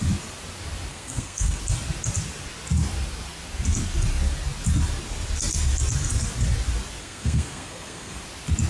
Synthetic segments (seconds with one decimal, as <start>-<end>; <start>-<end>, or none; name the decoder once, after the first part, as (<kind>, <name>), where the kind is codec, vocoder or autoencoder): 0.9-1.6 (codec, SNAC); 7.0-8.2